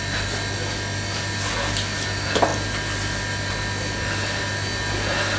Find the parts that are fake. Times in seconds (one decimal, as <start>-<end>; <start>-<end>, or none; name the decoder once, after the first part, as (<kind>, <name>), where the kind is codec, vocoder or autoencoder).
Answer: none